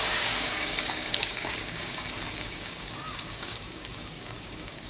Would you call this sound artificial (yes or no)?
yes